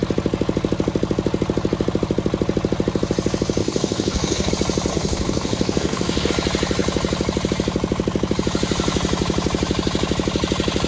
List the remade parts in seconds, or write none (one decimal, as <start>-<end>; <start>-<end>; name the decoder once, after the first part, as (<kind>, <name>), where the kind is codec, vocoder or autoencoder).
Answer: 3.6-4.5 (codec, DAC); 4.9-6.3